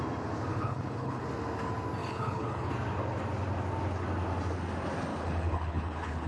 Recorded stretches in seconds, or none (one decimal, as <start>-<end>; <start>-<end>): 0.0-0.5; 1.2-2.0; 2.7-5.1